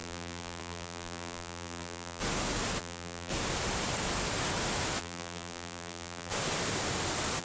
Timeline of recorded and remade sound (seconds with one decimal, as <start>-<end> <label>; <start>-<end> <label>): 0.0-2.2 remade; 2.2-2.8 recorded; 2.8-3.3 remade; 3.3-5.0 recorded; 5.0-6.3 remade; 6.3-7.4 recorded